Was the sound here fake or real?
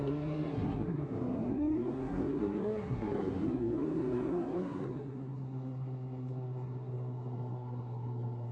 fake